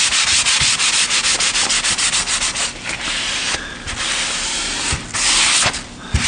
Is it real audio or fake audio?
real